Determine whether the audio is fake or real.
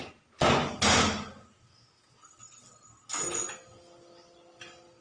real